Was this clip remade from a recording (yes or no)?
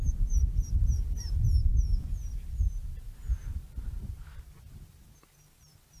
yes